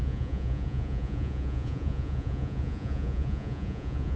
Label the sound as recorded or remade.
remade